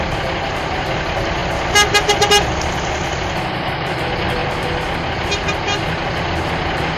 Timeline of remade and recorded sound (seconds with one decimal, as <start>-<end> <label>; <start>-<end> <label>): 0.0-7.0 recorded